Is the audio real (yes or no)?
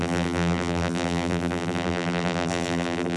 no